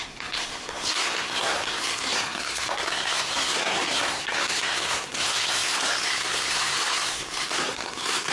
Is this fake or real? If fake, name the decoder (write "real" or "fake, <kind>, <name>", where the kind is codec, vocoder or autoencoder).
fake, codec, SNAC